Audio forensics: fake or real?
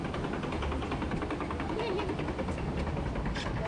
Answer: real